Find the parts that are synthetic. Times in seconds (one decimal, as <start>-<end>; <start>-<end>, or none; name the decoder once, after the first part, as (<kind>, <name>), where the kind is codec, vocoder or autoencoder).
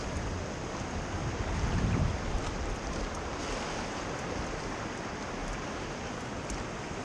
1.2-2.2 (vocoder, BigVGAN v2); 5.4-6.3